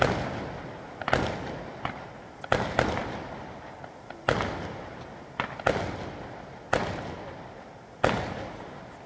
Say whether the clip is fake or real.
real